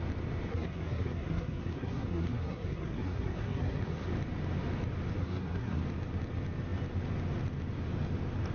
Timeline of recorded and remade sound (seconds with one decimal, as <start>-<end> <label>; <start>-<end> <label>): 0.0-0.5 recorded; 0.5-4.1 remade; 4.1-5.2 recorded; 5.2-5.8 remade; 5.8-8.5 recorded